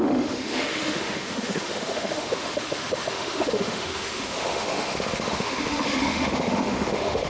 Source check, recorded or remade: remade